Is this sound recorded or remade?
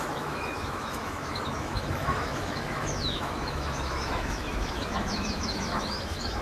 remade